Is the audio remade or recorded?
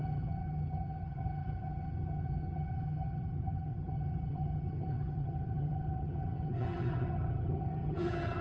remade